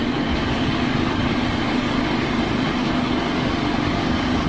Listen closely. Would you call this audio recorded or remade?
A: remade